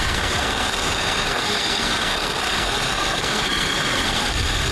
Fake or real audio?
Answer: fake